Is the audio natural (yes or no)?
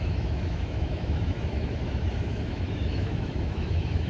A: no